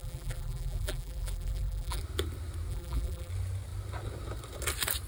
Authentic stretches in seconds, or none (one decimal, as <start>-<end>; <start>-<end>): 2.0-2.7; 3.3-5.1